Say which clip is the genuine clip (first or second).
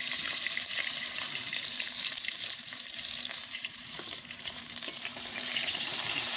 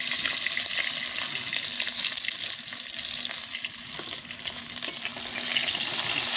second